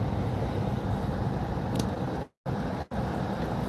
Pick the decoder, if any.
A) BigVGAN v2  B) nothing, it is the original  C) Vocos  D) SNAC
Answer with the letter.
B